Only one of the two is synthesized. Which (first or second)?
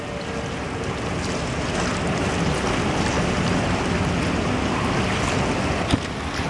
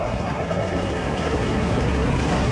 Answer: second